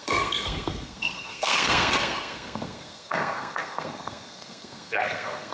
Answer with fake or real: fake